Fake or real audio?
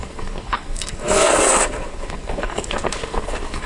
fake